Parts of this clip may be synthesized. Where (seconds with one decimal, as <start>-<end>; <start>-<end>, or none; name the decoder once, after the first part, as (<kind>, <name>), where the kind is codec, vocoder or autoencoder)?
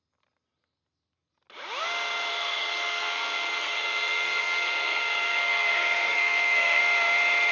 2.3-6.8 (codec, SNAC)